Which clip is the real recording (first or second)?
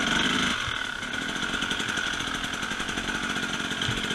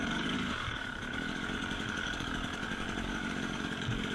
first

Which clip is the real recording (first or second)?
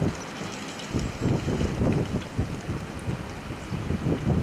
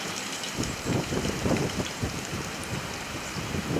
first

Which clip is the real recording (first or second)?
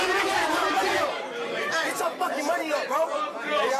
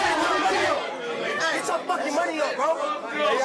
second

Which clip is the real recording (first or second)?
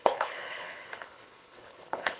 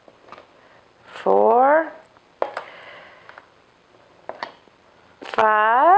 second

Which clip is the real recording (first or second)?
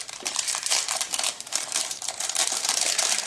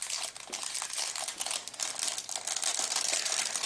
second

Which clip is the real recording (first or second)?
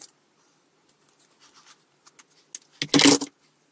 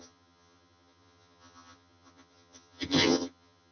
first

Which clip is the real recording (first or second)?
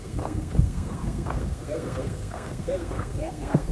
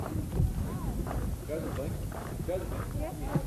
second